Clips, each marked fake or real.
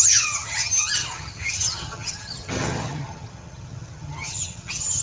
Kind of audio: fake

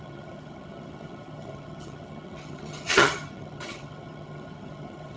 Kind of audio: fake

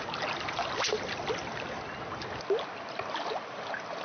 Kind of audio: real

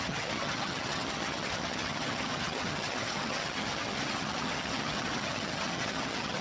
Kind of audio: fake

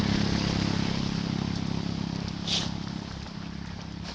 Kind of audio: real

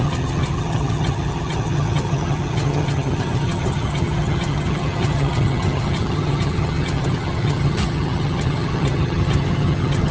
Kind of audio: fake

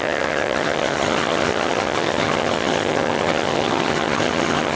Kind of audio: fake